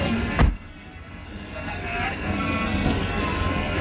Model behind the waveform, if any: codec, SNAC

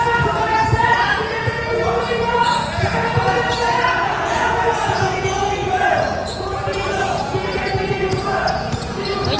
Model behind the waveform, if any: vocoder, Vocos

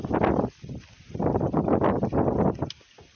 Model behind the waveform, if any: none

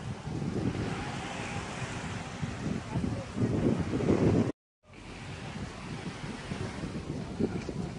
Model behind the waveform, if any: none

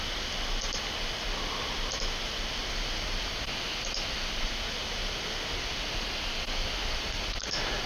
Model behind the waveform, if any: none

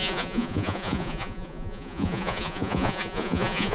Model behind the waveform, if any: vocoder, Vocos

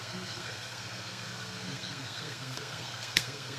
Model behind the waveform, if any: codec, SNAC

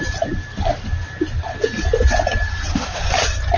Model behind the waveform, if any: none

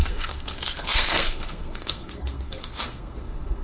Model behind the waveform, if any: codec, SNAC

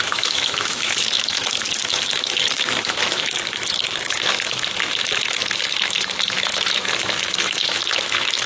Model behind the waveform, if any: autoencoder, DAC-VAE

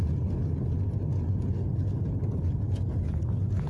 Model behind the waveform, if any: none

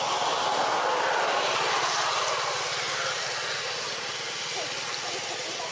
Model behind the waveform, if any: none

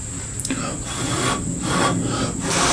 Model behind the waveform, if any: none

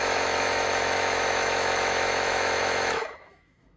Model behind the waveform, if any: autoencoder, DAC-VAE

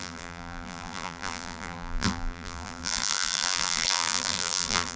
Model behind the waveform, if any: vocoder, BigVGAN v2